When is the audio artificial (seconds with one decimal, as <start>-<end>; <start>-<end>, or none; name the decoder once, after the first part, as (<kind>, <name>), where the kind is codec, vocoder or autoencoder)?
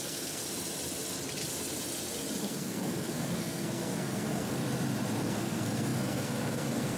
0.0-0.4 (codec, SNAC); 2.4-4.6; 5.2-7.0